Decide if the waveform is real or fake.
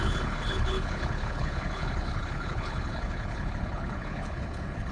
fake